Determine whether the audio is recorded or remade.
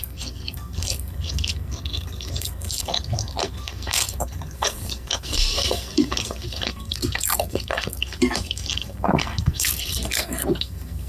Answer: remade